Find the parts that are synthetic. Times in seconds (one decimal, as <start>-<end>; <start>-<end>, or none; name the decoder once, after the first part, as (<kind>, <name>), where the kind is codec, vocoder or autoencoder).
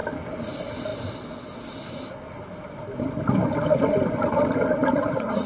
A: 4.8-5.5 (vocoder, Vocos)